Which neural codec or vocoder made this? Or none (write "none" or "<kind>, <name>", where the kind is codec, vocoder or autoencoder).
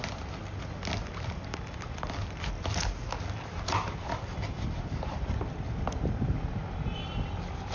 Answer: none